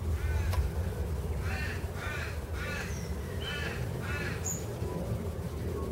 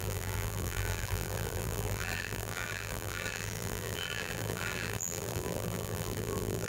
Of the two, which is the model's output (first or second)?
second